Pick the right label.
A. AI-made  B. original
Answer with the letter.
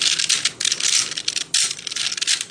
B